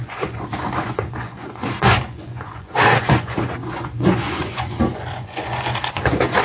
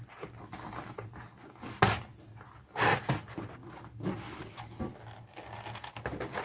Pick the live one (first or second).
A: second